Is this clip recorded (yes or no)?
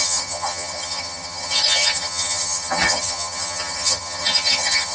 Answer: no